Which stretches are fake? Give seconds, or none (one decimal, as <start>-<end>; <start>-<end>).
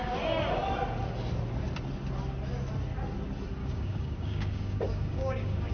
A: 3.6-5.7